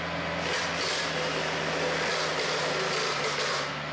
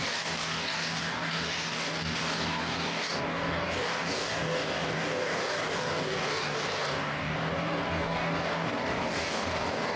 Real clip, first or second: first